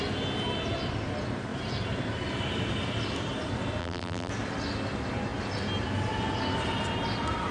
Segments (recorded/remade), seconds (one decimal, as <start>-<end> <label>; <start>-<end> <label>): 0.0-3.8 recorded; 3.8-4.3 remade; 4.3-7.5 recorded